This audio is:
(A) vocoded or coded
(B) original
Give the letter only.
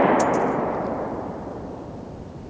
B